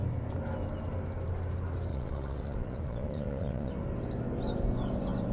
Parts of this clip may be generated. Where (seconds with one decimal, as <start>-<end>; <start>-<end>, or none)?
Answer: 1.9-3.7